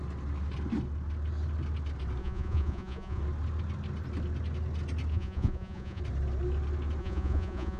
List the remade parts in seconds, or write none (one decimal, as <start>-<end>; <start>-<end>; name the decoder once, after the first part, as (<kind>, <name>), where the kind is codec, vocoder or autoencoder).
2.2-3.2 (vocoder, Vocos); 5.1-6.0; 7.0-7.8